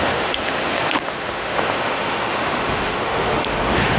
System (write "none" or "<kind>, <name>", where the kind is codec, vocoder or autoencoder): autoencoder, DAC-VAE